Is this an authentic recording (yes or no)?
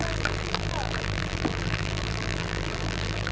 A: no